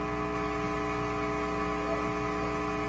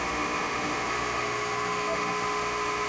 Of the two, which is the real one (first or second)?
first